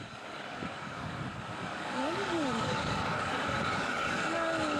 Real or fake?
fake